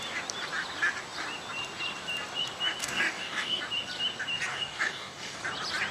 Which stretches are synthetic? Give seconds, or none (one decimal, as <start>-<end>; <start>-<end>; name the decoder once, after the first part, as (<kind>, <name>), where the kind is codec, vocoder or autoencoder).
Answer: 2.8-3.6 (codec, DAC); 4.5-5.4